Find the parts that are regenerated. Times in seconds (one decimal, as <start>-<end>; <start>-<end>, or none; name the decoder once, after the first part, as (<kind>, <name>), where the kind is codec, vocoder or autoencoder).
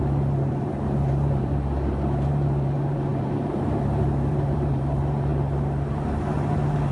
0.0-5.3 (vocoder, BigVGAN v2); 5.9-6.9